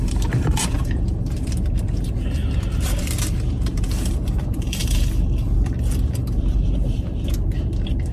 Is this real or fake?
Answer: fake